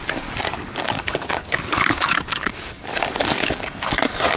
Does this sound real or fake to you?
fake